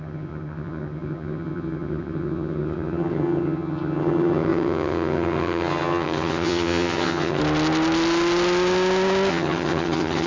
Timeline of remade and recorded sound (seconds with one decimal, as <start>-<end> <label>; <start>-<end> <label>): 0.0-7.4 remade; 7.4-9.3 recorded; 9.3-10.3 remade